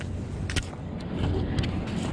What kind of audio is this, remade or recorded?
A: recorded